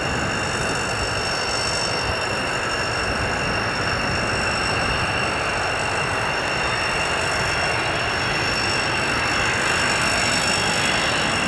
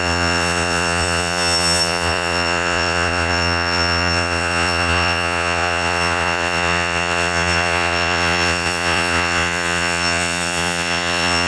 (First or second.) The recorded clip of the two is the first